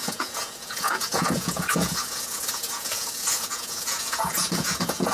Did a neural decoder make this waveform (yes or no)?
yes